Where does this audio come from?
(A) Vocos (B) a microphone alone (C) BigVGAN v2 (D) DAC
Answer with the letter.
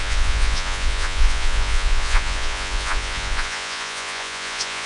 A